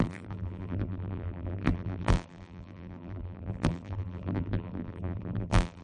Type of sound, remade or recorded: remade